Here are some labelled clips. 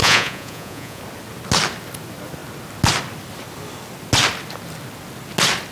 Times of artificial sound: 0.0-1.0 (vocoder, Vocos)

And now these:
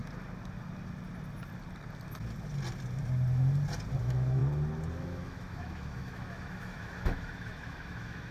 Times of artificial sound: 4.0-4.4 (autoencoder, DAC-VAE); 4.9-8.3